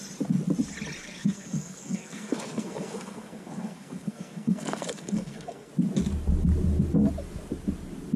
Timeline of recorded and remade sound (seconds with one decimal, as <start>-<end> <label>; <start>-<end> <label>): 0.0-1.0 recorded; 1.0-5.7 remade; 5.7-8.2 recorded